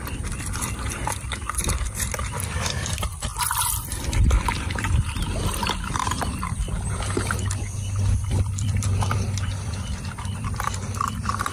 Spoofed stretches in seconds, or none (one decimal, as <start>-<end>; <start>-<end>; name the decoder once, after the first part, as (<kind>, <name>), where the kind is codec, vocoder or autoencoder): 0.0-11.5 (vocoder, BigVGAN v2)